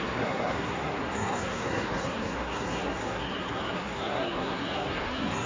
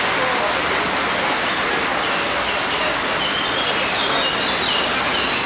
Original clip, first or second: second